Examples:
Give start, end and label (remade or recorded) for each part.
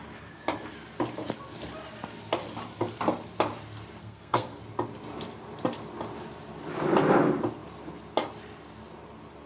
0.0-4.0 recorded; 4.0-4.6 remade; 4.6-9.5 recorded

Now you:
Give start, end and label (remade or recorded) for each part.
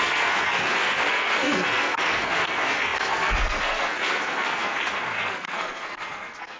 0.0-6.6 remade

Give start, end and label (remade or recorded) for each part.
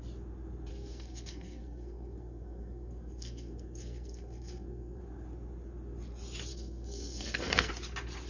0.0-0.7 recorded; 0.7-5.0 remade; 5.0-6.5 recorded; 6.5-7.7 remade; 7.7-8.3 recorded